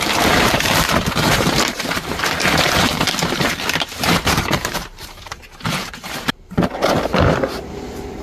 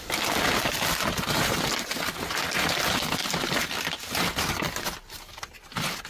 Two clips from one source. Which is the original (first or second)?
second